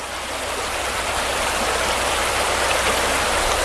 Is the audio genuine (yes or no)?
yes